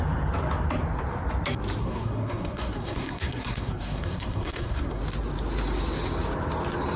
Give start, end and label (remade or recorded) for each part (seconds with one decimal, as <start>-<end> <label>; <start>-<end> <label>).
0.0-1.8 recorded; 1.8-5.0 remade; 5.0-7.0 recorded